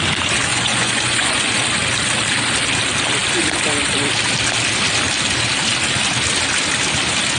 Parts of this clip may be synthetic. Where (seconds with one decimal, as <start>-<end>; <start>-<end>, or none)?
0.5-1.5